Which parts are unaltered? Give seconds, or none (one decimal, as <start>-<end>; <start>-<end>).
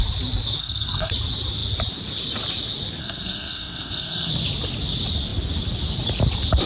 0.0-0.6; 1.1-3.0; 4.3-6.7